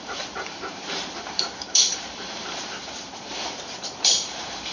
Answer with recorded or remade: remade